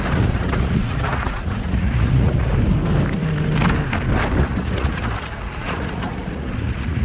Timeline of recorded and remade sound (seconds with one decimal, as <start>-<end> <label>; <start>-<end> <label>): 0.0-2.5 remade; 2.5-4.4 recorded; 4.4-7.0 remade